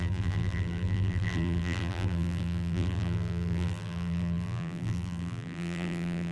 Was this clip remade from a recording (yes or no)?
yes